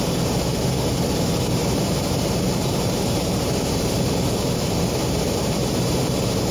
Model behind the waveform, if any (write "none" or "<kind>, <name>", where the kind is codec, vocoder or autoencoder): vocoder, BigVGAN v2